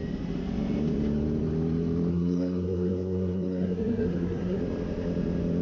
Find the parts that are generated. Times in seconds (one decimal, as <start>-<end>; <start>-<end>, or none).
2.1-4.6